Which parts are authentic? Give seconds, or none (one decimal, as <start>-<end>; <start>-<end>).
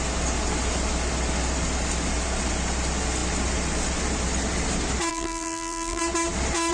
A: 0.0-5.1; 6.0-6.7